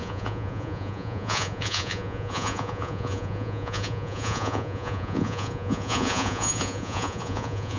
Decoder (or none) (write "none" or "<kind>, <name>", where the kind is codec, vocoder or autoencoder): vocoder, Vocos